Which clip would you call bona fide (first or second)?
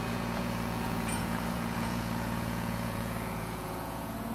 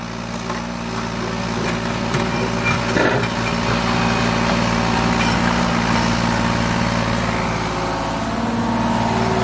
second